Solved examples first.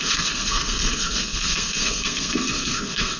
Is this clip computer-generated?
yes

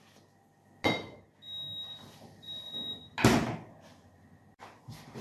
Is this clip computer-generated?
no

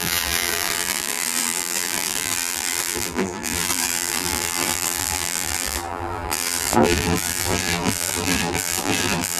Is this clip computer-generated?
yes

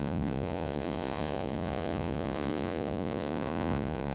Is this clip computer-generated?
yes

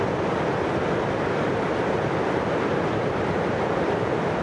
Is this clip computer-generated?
yes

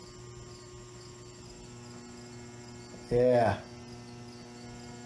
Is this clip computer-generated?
no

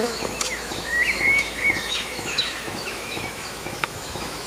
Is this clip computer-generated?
yes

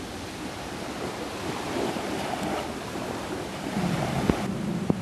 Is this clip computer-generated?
yes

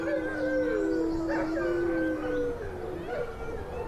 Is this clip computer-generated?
no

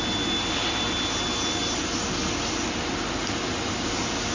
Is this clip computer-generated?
no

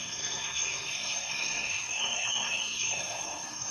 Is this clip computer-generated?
yes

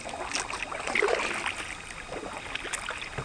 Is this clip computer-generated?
no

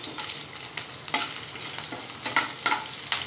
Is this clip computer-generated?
no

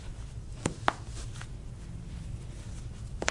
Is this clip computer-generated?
yes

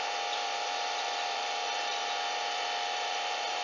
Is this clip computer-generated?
yes